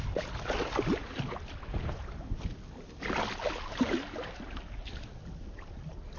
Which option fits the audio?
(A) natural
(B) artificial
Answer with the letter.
A